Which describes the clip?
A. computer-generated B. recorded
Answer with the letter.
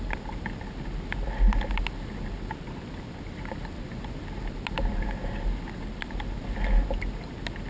B